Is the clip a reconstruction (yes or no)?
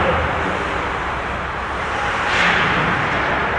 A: yes